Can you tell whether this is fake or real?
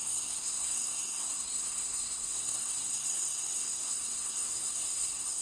fake